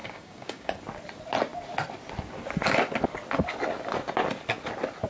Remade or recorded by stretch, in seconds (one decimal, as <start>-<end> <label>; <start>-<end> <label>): 0.0-0.8 remade; 0.8-5.1 recorded